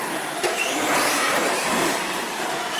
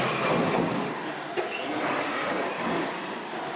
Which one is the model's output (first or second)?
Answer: first